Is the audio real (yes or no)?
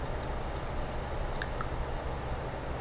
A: yes